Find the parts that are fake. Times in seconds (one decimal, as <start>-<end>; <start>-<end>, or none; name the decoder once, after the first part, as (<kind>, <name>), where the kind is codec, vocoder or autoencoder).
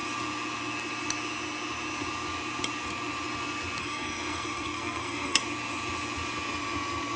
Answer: 3.8-5.4 (codec, SNAC)